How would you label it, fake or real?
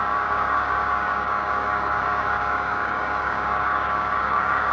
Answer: fake